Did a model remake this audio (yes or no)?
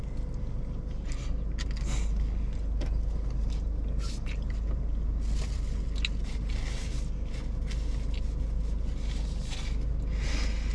no